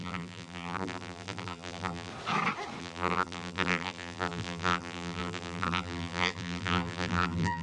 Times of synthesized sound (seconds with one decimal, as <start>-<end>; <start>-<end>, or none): 0.0-2.1; 2.8-7.6